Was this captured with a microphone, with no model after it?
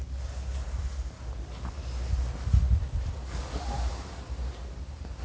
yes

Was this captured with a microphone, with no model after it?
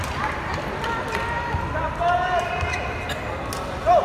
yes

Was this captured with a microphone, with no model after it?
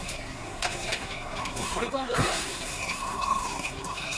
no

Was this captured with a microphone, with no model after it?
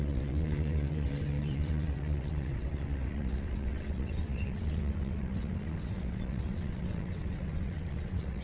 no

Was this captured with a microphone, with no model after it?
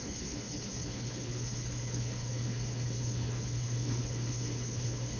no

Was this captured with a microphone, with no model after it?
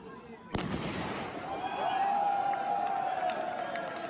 yes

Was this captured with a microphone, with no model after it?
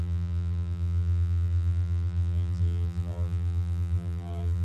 no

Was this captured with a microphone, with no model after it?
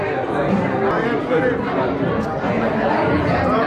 no